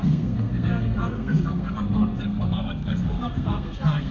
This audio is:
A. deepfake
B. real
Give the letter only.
A